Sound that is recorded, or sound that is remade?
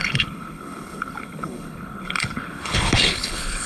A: remade